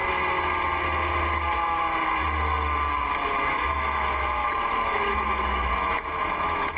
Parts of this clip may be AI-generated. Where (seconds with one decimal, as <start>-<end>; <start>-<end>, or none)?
3.4-6.8